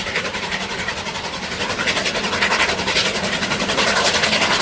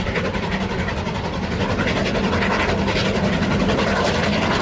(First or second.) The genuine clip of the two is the second